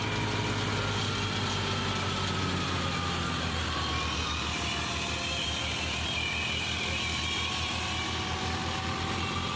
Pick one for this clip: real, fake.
real